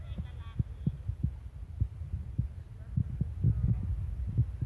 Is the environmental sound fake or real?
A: real